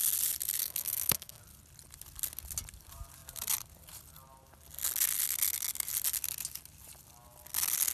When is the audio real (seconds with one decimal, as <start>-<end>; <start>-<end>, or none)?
0.0-0.6; 1.4-7.9